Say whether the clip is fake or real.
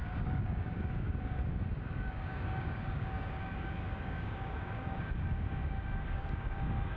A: fake